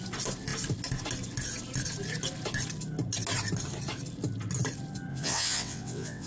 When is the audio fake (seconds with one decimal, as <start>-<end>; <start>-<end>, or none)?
5.1-6.3